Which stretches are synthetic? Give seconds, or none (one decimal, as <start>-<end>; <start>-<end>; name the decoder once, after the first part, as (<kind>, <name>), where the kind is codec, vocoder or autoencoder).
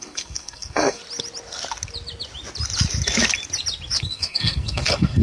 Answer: 0.0-1.0 (codec, SNAC); 4.0-5.2